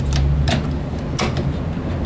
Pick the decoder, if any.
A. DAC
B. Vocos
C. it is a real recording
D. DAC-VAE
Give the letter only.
C